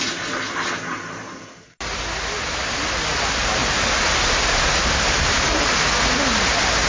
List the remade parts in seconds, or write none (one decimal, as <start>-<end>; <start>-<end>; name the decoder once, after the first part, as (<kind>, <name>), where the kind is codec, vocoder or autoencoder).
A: none